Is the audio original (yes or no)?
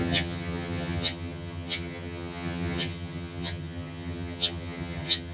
no